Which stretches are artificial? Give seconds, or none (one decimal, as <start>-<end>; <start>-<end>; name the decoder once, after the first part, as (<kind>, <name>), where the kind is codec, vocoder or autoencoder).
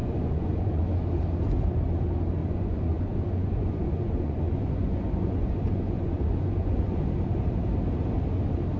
0.0-0.8 (vocoder, Vocos); 2.4-7.1